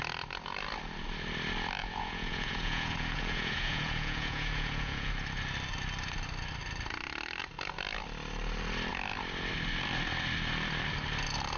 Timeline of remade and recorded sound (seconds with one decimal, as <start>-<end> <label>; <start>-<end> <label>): 0.0-1.8 recorded; 1.8-5.1 remade; 5.1-11.6 recorded